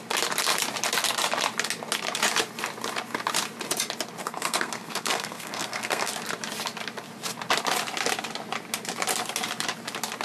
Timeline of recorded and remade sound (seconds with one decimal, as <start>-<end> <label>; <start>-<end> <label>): 0.0-4.2 recorded; 4.2-6.1 remade; 6.1-10.2 recorded